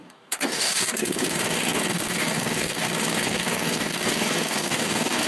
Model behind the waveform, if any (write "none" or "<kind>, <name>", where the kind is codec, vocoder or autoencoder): codec, DAC